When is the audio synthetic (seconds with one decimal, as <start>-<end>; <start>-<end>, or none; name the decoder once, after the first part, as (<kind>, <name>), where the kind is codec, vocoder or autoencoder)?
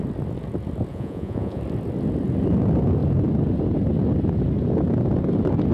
0.9-1.6 (vocoder, Vocos)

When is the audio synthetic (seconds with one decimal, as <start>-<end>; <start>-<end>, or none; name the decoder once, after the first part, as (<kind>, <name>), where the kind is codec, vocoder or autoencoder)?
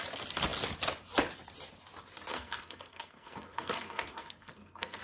2.3-5.0 (codec, SNAC)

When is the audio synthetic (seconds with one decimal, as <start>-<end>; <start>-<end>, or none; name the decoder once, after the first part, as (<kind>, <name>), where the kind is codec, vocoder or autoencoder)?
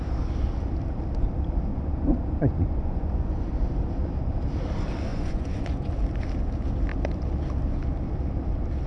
1.7-3.5 (vocoder, Vocos); 5.1-5.9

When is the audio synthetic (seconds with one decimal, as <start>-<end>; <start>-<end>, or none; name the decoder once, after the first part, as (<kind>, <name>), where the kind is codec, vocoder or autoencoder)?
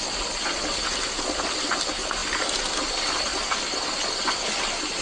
none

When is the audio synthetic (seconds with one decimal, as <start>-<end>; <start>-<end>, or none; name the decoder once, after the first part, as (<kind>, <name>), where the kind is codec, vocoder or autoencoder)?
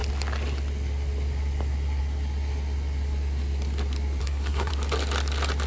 4.2-4.7 (codec, SNAC)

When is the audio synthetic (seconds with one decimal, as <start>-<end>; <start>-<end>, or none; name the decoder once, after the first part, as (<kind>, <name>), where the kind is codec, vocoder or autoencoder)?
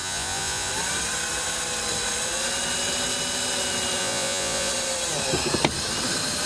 0.0-0.7 (vocoder, Vocos); 4.0-4.7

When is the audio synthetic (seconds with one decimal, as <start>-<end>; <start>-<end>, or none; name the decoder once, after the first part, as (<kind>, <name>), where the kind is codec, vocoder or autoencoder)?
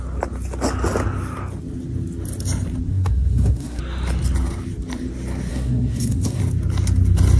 2.9-3.8 (codec, SNAC); 5.5-6.4